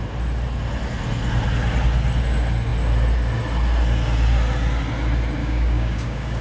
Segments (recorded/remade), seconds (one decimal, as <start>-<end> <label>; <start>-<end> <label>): 0.0-5.4 recorded; 5.4-6.4 remade